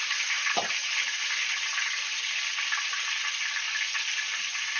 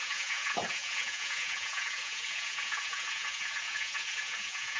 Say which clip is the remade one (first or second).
second